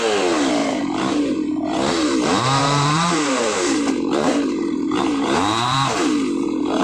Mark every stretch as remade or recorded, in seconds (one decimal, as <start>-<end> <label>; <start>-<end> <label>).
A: 0.0-0.6 recorded; 0.6-1.3 remade; 1.3-2.6 recorded; 2.6-5.9 remade; 5.9-6.8 recorded